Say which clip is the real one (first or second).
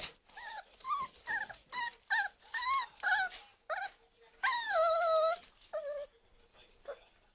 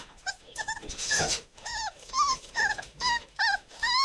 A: first